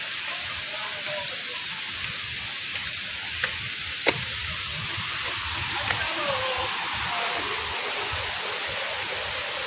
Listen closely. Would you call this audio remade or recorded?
recorded